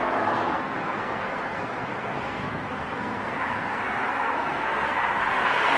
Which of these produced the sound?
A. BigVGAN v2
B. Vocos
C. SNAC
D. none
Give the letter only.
C